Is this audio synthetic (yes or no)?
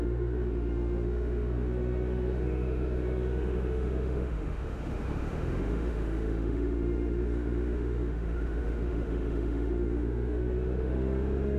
yes